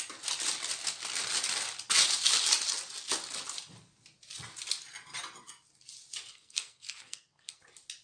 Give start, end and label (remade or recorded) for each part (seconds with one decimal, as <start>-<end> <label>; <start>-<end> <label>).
0.0-6.3 recorded; 6.3-7.6 remade; 7.6-8.0 recorded